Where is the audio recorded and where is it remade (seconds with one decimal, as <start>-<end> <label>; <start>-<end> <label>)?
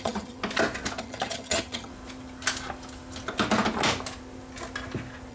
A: 0.0-0.4 remade; 0.4-1.0 recorded; 1.0-1.9 remade; 1.9-5.3 recorded